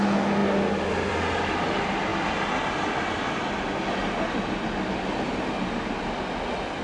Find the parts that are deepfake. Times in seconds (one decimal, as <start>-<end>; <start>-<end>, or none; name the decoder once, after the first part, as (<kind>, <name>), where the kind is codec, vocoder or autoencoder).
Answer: none